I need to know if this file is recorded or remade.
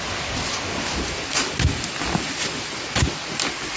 recorded